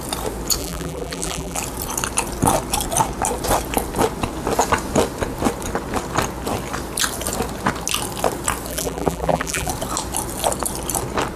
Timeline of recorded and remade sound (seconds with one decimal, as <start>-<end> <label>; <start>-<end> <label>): 0.0-0.6 recorded; 0.6-1.6 remade; 1.6-8.7 recorded; 8.7-9.7 remade; 9.7-11.4 recorded